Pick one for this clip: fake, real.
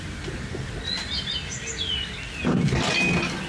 real